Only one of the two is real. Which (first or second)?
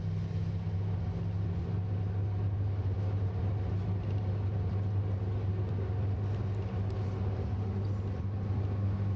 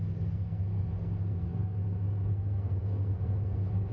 first